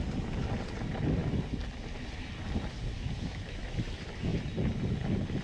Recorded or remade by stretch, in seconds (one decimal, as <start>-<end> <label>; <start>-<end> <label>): 0.0-2.9 recorded; 2.9-3.9 remade; 3.9-5.4 recorded